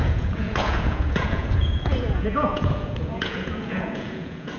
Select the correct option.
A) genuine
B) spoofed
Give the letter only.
B